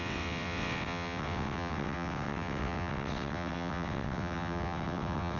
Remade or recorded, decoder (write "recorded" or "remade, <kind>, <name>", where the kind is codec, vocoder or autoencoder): remade, vocoder, WaveNeXt